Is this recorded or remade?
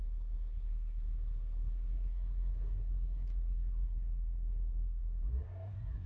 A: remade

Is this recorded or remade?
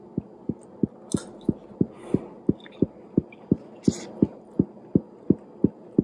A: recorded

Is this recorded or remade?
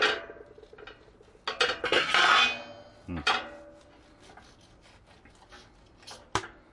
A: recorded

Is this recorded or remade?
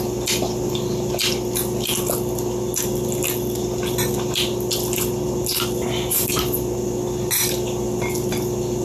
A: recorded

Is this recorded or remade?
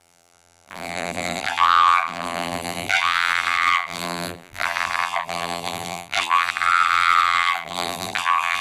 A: remade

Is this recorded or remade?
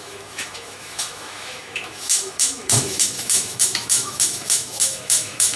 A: remade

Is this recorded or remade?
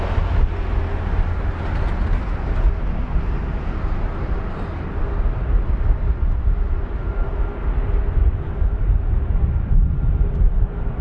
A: recorded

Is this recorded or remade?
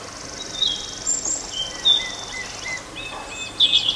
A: recorded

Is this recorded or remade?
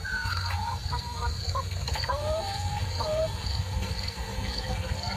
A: remade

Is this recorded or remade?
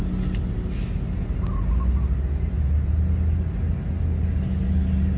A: recorded